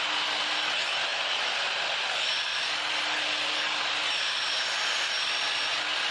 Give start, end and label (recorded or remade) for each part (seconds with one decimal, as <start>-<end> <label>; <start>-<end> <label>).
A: 0.0-6.1 recorded